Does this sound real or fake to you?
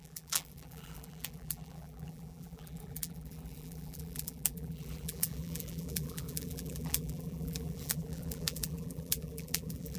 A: fake